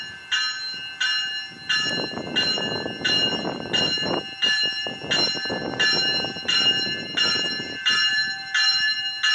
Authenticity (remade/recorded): recorded